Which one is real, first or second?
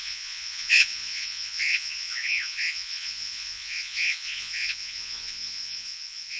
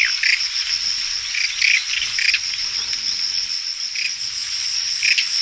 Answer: second